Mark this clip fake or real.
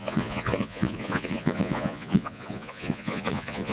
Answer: fake